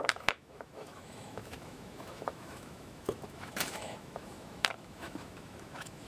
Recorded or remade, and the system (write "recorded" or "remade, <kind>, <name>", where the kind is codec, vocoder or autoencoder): remade, autoencoder, DAC-VAE